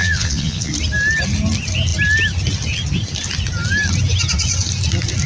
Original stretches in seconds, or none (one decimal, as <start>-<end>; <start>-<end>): 0.7-5.3